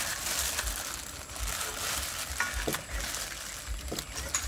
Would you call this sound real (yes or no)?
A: yes